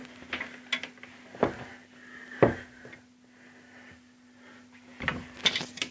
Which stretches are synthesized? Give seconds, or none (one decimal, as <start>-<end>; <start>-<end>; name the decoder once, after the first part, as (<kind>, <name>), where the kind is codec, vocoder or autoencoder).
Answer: none